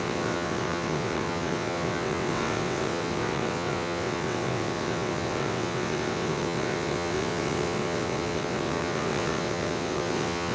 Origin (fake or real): fake